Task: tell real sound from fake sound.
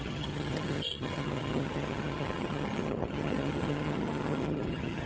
fake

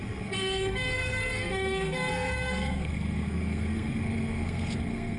fake